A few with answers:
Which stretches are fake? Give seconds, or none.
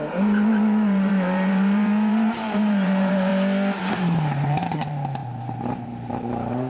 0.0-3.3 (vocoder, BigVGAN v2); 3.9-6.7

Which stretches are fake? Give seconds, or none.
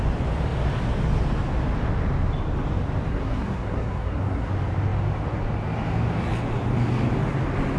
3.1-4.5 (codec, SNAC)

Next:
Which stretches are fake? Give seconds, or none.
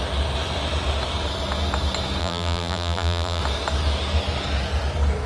2.2-3.4 (vocoder, BigVGAN v2)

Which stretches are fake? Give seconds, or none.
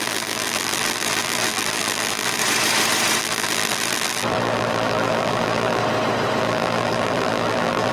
0.0-2.4 (vocoder, BigVGAN v2); 3.2-5.8; 6.4-7.9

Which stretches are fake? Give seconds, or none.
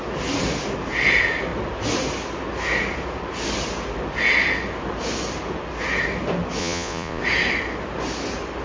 6.6-7.2 (vocoder, Vocos)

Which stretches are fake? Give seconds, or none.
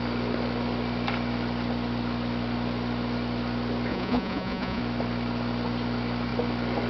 3.9-4.8 (vocoder, Vocos)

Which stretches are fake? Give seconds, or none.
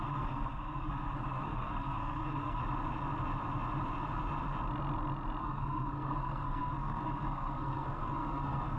0.0-2.6 (codec, SNAC); 5.4-8.8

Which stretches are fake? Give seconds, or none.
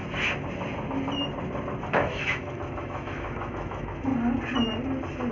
1.8-4.1 (autoencoder, DAC-VAE)